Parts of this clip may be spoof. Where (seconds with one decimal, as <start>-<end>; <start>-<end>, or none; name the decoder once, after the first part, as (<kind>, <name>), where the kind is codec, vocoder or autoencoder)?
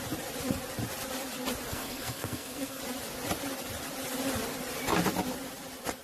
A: 1.7-2.8 (codec, SNAC)